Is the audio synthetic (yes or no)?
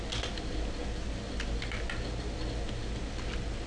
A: no